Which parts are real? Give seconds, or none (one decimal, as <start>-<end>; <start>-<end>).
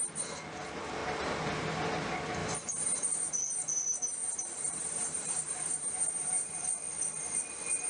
0.0-2.4; 3.2-4.2; 6.6-7.9